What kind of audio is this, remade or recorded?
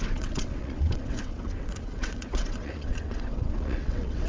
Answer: remade